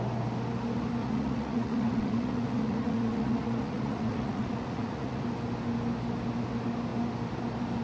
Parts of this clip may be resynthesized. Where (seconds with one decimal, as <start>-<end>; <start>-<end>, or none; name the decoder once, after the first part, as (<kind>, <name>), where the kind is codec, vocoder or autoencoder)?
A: 1.0-5.2 (vocoder, Vocos)